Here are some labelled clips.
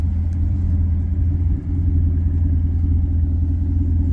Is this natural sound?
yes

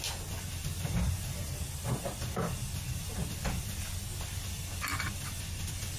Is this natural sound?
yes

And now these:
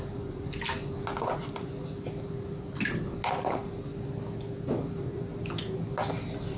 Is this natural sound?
yes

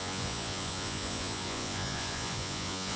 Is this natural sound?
no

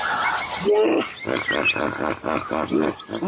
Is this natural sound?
yes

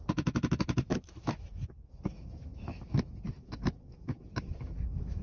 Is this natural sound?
no